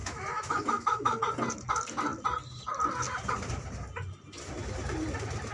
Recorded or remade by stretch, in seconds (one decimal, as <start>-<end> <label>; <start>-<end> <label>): 0.0-1.2 remade; 1.2-5.5 recorded